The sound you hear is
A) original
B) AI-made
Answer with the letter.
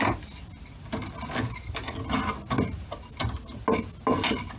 A